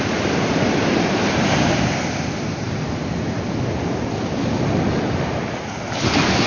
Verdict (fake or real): real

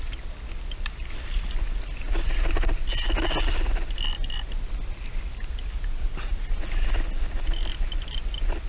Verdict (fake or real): real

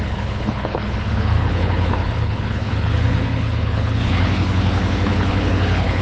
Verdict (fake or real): fake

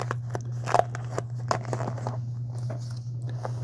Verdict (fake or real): real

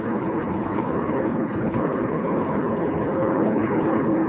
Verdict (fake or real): fake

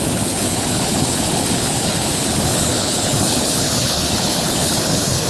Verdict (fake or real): fake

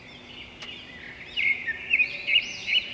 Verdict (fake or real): real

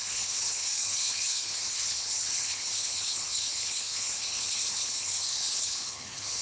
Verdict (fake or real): fake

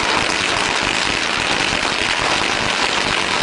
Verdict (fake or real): real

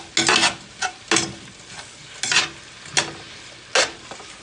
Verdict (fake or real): real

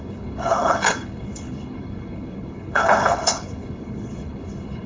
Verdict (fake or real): fake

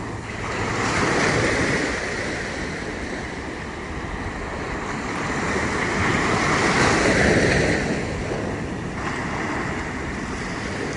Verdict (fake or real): real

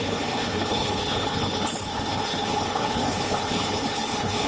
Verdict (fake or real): fake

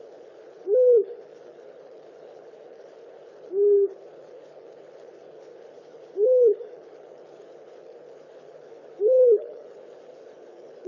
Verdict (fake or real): fake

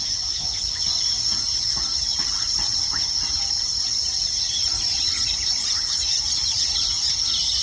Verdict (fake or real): real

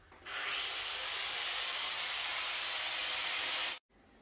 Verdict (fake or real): real